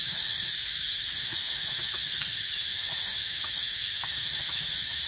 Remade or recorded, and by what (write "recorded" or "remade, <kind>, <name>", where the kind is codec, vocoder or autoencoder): remade, autoencoder, DAC-VAE